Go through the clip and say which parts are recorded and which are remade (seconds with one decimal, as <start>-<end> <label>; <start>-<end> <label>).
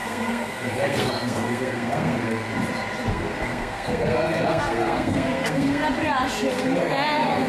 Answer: 0.0-2.5 remade; 2.5-3.1 recorded; 3.1-5.8 remade; 5.8-6.5 recorded; 6.5-7.5 remade